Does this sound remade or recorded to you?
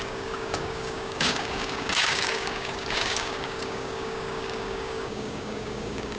remade